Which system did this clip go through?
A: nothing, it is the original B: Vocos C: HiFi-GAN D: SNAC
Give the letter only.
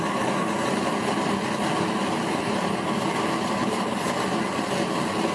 A